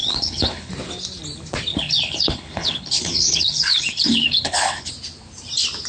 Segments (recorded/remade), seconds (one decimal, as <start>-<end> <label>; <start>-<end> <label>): 0.0-0.7 remade; 0.7-1.7 recorded; 1.7-4.9 remade; 4.9-5.9 recorded